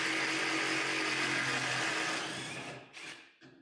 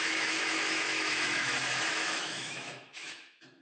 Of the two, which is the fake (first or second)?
second